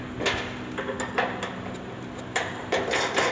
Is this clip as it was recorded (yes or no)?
yes